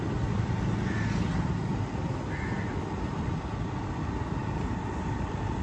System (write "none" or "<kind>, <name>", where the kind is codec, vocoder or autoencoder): none